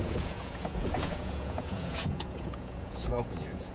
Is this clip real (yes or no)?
no